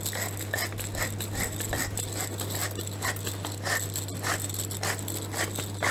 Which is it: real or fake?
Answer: real